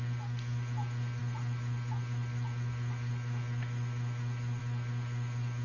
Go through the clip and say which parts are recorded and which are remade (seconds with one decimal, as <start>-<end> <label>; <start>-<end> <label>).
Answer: 0.0-5.6 recorded